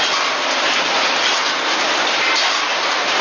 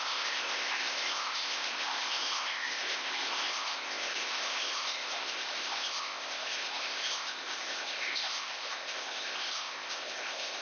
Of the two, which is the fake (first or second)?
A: second